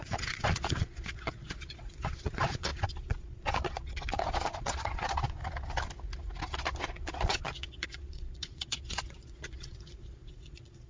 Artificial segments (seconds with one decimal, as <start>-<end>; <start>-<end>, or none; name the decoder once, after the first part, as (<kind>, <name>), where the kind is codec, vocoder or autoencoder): 0.0-5.4 (vocoder, Vocos); 6.8-10.9